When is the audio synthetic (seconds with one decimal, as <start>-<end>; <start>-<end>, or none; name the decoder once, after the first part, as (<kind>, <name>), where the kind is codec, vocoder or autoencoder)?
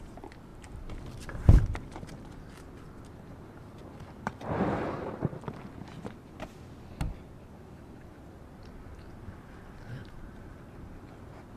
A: 0.5-2.5 (vocoder, BigVGAN v2); 3.8-5.4; 10.0-11.2